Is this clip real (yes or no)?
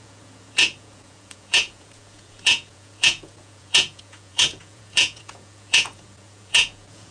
no